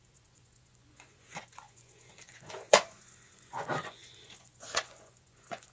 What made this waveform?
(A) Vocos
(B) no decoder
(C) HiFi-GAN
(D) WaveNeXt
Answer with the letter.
A